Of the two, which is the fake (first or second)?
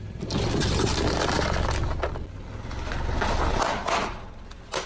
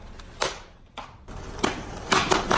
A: second